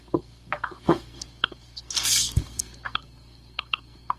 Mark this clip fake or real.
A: fake